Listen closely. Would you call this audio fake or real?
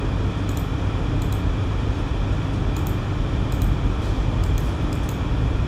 real